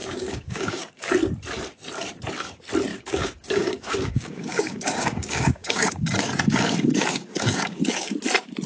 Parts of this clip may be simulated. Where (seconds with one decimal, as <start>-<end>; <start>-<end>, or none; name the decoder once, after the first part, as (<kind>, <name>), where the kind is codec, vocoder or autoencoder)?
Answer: 0.0-1.1 (codec, DAC); 2.9-8.1